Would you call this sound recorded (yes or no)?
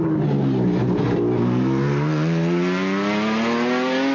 yes